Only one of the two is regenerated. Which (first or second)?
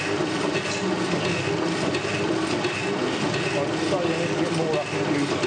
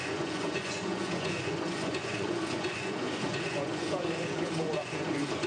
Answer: second